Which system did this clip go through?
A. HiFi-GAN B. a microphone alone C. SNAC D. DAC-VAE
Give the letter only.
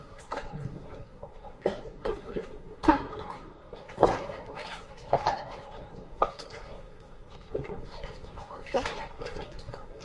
C